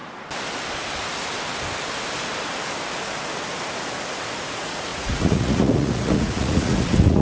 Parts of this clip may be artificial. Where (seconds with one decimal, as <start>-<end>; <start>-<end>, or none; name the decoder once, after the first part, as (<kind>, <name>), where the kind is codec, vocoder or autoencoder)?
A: 4.3-7.2 (vocoder, Vocos)